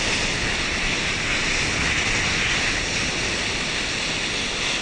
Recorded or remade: recorded